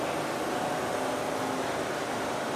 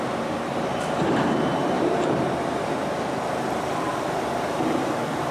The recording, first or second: first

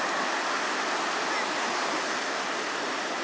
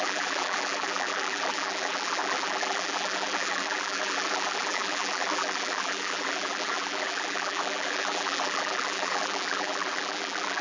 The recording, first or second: first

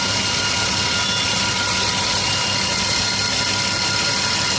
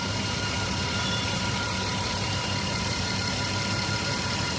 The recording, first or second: first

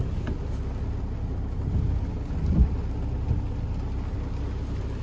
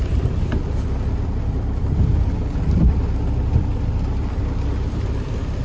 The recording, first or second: first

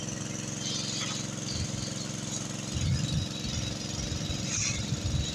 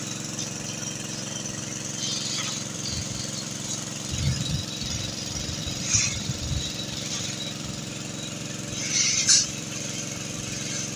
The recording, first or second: first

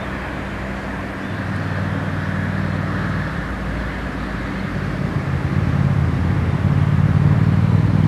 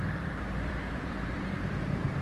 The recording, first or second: first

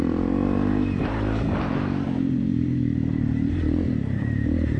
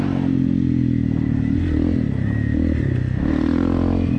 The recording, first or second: second